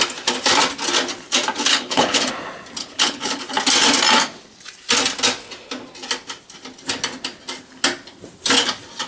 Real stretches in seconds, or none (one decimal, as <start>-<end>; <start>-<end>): 0.0-1.7; 2.3-2.8; 3.4-9.1